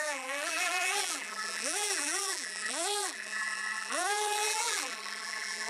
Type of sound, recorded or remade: remade